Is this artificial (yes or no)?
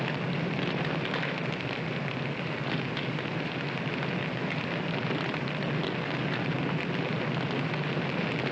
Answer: no